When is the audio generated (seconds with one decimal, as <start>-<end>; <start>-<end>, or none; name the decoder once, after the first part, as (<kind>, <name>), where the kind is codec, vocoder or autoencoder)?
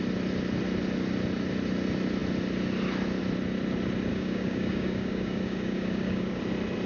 4.1-6.4 (codec, DAC)